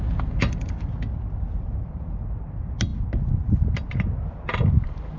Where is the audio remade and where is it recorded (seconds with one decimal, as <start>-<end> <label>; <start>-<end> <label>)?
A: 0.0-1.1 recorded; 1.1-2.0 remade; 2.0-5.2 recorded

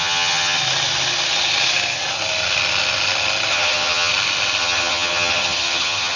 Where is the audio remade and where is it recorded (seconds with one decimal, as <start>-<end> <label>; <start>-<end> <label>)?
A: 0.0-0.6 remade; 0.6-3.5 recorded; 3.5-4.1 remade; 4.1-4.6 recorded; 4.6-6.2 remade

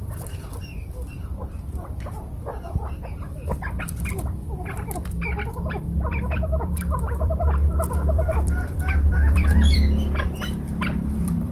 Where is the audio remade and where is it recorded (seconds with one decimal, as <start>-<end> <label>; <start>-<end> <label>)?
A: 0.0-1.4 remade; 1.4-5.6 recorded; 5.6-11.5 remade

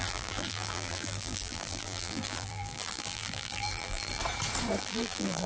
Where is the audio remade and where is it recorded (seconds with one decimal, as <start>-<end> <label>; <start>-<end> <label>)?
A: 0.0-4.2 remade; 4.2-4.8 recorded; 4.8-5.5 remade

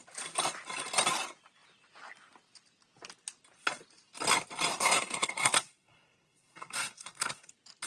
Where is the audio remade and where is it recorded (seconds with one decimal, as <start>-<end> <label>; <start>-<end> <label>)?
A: 0.0-4.7 recorded; 4.7-7.5 remade; 7.5-7.9 recorded